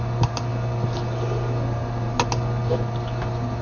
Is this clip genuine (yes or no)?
yes